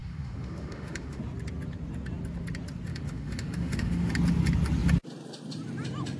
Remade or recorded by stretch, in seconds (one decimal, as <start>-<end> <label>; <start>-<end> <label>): 0.0-1.2 remade; 1.2-2.9 recorded; 2.9-4.1 remade; 4.1-6.2 recorded

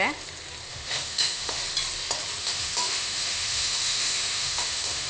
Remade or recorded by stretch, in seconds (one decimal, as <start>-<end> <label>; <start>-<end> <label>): 0.0-0.7 recorded; 0.7-1.6 remade; 1.6-2.4 recorded; 2.4-5.1 remade

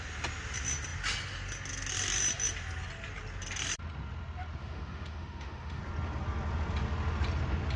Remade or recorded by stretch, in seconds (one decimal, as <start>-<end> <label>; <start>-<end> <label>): 0.0-4.6 recorded; 4.6-5.8 remade; 5.8-7.8 recorded

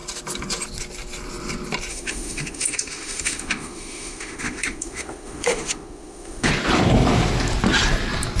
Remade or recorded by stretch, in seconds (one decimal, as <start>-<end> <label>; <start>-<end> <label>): 0.0-1.9 recorded; 1.9-6.5 remade; 6.5-8.4 recorded

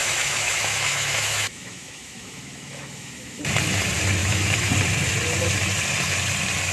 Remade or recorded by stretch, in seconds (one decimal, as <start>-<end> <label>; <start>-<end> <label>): 0.0-3.4 remade; 3.4-4.2 recorded; 4.2-4.7 remade; 4.7-6.7 recorded

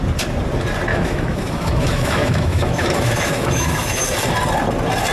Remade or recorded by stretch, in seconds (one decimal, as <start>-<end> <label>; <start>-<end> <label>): 0.0-0.9 recorded; 0.9-4.0 remade; 4.0-5.1 recorded

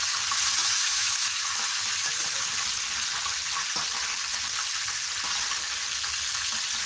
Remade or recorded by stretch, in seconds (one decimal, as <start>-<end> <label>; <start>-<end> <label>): 0.0-0.6 recorded; 0.6-1.8 remade; 1.8-6.9 recorded

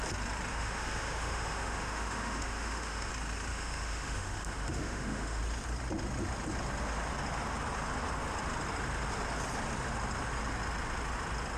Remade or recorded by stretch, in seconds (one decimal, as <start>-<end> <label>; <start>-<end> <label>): 0.0-0.5 recorded; 0.5-3.1 remade; 3.1-3.5 recorded; 3.5-5.4 remade; 5.4-11.6 recorded